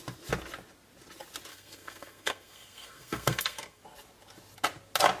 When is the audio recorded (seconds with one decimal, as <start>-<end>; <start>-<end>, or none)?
0.0-1.5; 3.8-5.2